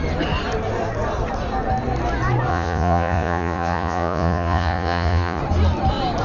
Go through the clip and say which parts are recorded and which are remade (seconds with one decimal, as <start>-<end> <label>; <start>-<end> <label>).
0.0-2.5 recorded; 2.5-5.4 remade; 5.4-6.2 recorded

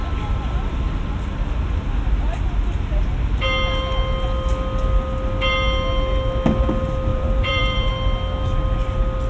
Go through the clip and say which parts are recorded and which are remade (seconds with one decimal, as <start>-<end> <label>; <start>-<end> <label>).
0.0-7.1 recorded; 7.1-7.9 remade; 7.9-9.3 recorded

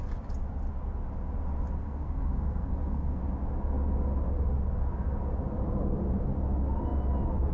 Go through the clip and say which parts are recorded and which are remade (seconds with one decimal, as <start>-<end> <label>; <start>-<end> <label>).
0.0-1.8 recorded; 1.8-3.2 remade; 3.2-7.5 recorded